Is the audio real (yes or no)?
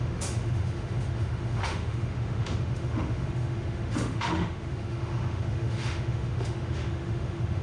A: no